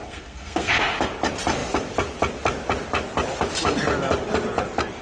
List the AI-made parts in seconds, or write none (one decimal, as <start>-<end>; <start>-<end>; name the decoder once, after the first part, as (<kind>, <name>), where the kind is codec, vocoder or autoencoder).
0.0-0.8 (codec, SNAC)